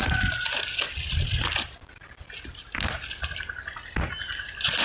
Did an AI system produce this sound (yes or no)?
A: no